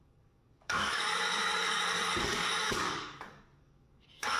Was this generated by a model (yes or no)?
yes